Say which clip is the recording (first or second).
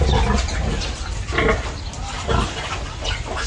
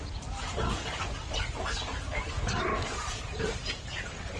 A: first